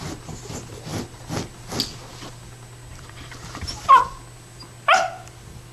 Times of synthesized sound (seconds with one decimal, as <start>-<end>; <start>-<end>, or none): 2.9-3.7